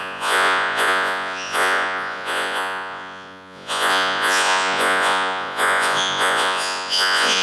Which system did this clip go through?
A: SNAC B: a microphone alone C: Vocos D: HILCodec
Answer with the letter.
C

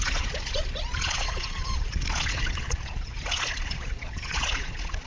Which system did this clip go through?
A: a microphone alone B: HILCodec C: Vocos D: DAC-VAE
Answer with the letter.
C